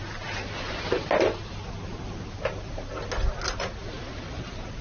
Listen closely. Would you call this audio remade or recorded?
recorded